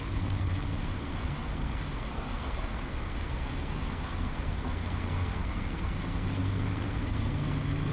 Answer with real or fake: fake